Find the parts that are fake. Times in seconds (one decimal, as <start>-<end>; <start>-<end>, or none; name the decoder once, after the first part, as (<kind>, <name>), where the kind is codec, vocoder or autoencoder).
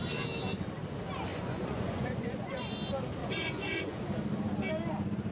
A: 1.3-2.6 (vocoder, Vocos); 3.2-4.0